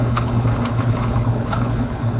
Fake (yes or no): yes